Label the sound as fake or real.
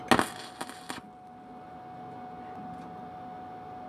real